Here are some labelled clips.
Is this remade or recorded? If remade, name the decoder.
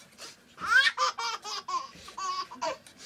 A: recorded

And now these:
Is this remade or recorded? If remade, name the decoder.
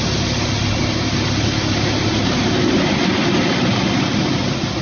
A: recorded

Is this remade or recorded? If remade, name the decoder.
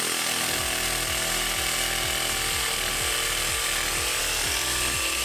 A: recorded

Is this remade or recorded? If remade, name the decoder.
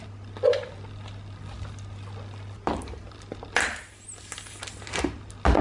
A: recorded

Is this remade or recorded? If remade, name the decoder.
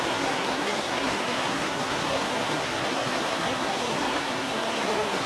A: remade, codec, SNAC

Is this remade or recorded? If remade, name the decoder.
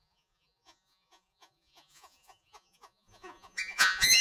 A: remade, vocoder, Vocos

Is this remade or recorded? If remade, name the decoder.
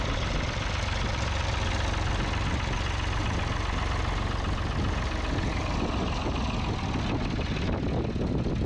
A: recorded